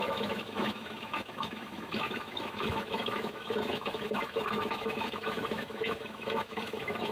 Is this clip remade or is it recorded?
remade